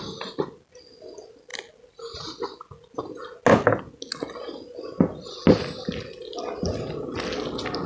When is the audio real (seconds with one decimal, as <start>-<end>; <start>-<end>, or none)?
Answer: 0.0-7.9